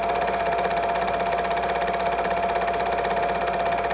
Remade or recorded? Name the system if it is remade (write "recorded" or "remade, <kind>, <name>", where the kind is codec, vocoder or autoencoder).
recorded